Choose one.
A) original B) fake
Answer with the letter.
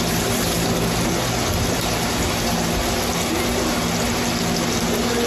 A